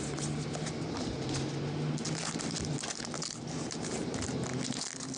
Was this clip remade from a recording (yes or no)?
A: no